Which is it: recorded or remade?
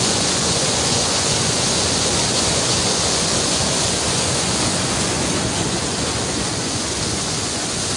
remade